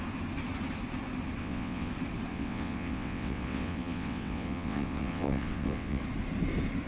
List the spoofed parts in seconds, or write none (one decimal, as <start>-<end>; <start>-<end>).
1.4-1.9; 2.3-6.0

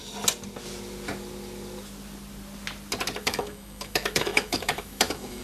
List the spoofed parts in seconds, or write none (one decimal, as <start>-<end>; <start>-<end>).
3.2-5.4

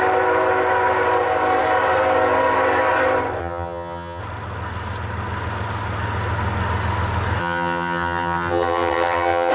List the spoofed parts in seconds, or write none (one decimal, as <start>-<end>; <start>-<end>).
3.4-4.2; 7.4-9.5

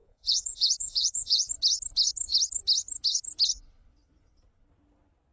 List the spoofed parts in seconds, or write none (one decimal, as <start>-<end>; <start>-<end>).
0.0-1.5